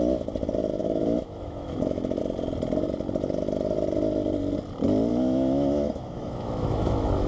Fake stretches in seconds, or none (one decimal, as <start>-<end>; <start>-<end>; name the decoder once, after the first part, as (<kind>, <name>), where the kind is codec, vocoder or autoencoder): 0.8-2.2 (autoencoder, DAC-VAE); 5.1-7.3

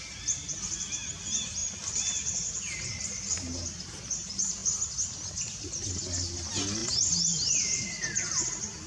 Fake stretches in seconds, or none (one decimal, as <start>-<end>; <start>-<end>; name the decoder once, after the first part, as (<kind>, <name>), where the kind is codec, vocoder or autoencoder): none

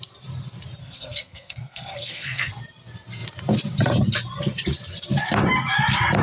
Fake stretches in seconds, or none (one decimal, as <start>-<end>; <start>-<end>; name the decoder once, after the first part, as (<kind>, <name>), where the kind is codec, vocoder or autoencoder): 0.8-2.5 (codec, SNAC)